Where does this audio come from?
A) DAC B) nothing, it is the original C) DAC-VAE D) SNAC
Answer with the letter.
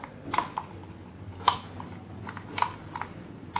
B